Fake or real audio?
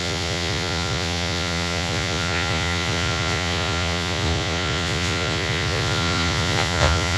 fake